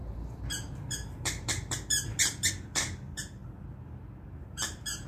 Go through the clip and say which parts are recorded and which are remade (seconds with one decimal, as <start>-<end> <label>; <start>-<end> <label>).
0.0-3.4 remade; 3.4-4.4 recorded; 4.4-5.1 remade